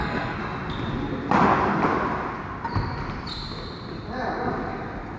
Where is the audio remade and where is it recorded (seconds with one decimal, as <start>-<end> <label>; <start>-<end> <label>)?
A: 0.0-0.4 remade; 0.4-1.4 recorded; 1.4-1.8 remade; 1.8-5.2 recorded